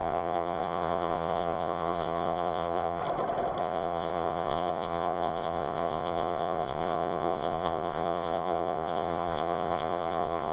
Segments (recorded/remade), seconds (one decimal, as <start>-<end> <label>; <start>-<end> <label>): 0.0-3.0 remade; 3.0-3.6 recorded; 3.6-10.5 remade